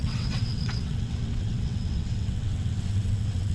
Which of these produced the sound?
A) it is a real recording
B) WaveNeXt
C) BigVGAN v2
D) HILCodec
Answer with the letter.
B